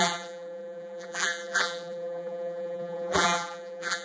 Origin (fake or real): fake